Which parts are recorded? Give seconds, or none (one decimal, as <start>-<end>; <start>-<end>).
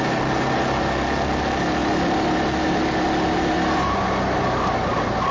0.0-5.3